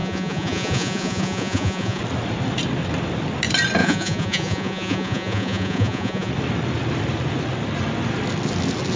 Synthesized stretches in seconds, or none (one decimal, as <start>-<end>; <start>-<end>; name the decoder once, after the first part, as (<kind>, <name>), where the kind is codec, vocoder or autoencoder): 0.0-2.0 (vocoder, Vocos); 3.8-6.3